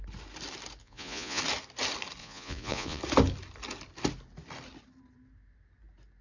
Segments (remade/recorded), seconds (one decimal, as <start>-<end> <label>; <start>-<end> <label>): 0.0-0.8 recorded; 0.8-1.4 remade; 1.4-2.2 recorded; 2.2-3.0 remade; 3.0-6.2 recorded